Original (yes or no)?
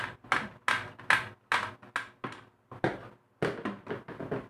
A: yes